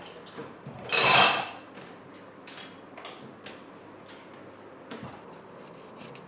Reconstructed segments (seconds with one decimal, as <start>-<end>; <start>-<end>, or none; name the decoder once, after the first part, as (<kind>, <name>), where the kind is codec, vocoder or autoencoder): 0.4-1.0 (vocoder, BigVGAN v2)